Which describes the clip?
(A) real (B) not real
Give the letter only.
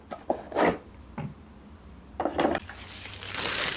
B